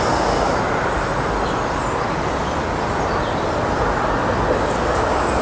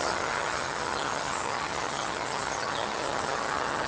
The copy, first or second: second